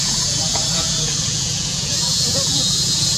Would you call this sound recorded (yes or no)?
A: no